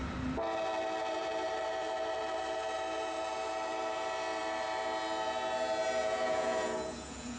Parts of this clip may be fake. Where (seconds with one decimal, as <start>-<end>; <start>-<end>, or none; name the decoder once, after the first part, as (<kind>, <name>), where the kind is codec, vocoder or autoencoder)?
6.0-7.4 (vocoder, Vocos)